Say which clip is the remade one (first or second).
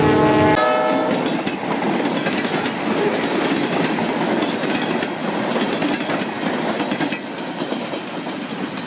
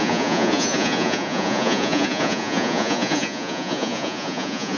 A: second